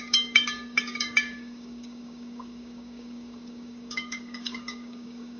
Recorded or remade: remade